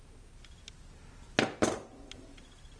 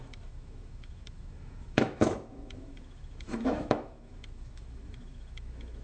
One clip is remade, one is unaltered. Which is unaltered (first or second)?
first